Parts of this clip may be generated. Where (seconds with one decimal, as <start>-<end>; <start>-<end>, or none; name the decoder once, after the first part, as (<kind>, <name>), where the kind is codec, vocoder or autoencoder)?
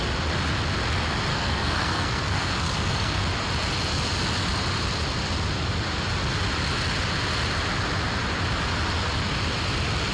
1.3-3.2 (codec, SNAC)